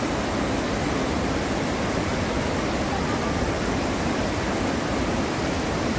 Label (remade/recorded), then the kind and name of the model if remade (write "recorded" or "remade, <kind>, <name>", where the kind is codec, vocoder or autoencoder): recorded